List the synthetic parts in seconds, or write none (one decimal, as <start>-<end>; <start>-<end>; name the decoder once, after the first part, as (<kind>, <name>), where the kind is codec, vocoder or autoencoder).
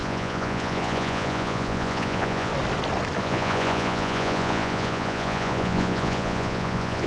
0.0-2.5 (vocoder, Vocos); 3.2-7.1